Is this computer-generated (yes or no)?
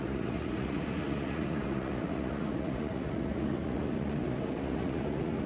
yes